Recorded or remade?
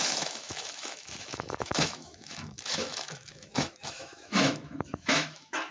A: remade